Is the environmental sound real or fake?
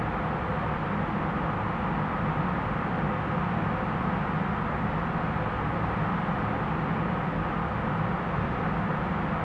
real